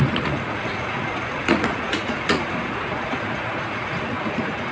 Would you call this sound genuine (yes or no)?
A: no